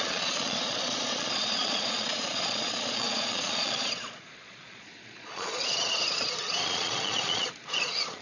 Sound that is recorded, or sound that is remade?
remade